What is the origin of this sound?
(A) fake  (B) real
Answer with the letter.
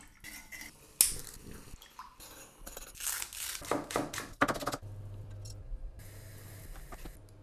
B